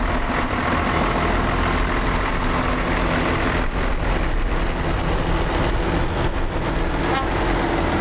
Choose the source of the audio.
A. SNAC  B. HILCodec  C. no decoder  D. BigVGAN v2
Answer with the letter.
C